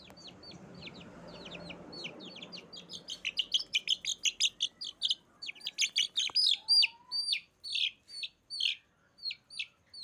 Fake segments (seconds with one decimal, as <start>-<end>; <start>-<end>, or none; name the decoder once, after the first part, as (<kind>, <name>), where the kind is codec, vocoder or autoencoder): none